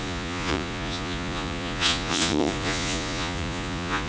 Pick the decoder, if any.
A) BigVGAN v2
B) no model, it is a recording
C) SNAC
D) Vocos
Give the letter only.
D